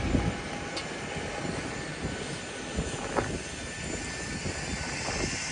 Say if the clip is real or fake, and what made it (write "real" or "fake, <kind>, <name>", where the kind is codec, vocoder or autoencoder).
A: real